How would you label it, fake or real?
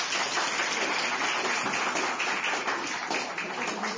real